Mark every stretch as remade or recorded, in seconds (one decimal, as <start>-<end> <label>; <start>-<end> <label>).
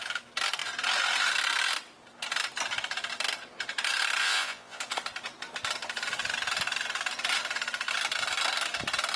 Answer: 0.0-4.2 recorded; 4.2-4.8 remade; 4.8-9.2 recorded